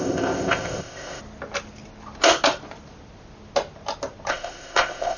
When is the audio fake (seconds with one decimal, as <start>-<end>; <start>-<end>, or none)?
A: 0.0-1.2; 4.3-5.2